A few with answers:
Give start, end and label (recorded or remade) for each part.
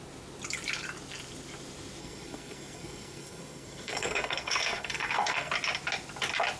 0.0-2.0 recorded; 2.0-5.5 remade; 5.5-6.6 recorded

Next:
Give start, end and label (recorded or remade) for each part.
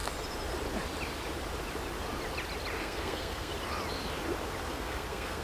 0.0-2.8 recorded; 2.8-3.5 remade; 3.5-4.7 recorded; 4.7-5.4 remade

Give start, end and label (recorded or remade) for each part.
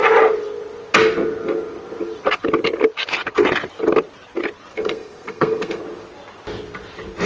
0.0-4.7 recorded; 4.7-5.8 remade; 5.8-7.3 recorded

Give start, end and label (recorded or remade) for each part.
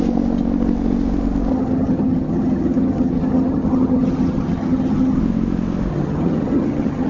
0.0-1.5 recorded; 1.5-5.2 remade; 5.2-5.9 recorded; 5.9-7.1 remade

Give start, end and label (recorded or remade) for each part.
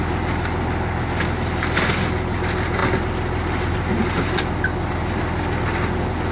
0.0-6.3 recorded